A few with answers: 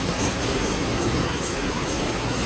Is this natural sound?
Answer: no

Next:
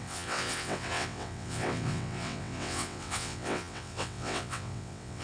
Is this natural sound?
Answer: no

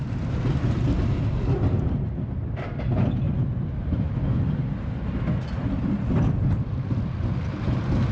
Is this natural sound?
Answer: yes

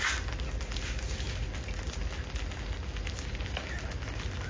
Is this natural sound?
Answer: yes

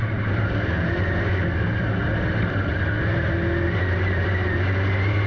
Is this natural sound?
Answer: yes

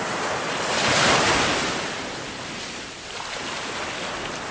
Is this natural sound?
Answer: yes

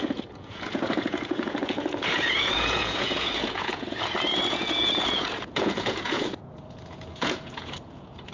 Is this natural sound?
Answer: no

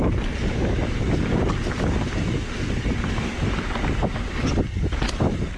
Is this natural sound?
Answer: yes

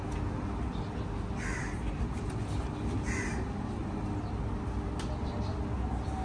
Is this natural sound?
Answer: yes